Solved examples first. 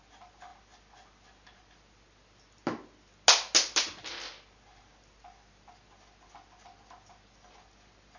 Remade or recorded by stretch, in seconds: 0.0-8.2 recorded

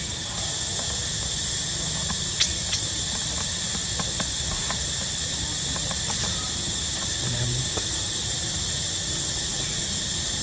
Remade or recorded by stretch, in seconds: 0.0-9.5 recorded; 9.5-10.0 remade; 10.0-10.4 recorded